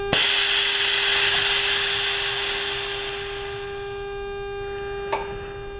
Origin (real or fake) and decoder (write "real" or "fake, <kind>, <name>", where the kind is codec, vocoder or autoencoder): real